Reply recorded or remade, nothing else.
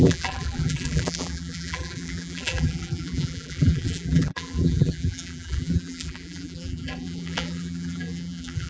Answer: remade